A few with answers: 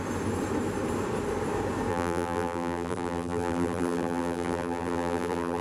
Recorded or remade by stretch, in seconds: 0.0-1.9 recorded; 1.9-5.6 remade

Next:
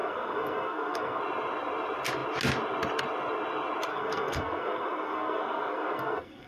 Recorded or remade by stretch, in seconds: 0.0-1.2 remade; 1.2-3.9 recorded; 3.9-6.5 remade

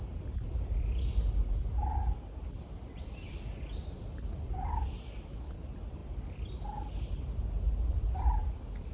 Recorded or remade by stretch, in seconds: 0.0-8.9 recorded

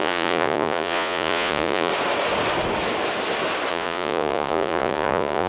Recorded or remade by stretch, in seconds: 0.0-1.9 remade; 1.9-3.7 recorded; 3.7-5.5 remade